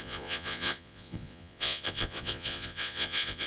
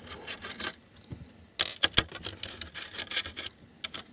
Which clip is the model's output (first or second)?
first